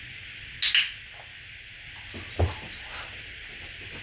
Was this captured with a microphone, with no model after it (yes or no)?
yes